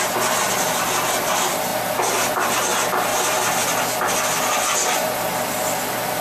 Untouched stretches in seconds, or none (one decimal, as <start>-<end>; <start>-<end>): 0.0-6.2